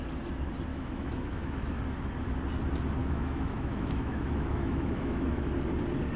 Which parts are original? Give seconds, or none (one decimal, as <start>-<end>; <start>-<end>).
0.0-0.7; 1.8-3.0; 5.5-6.2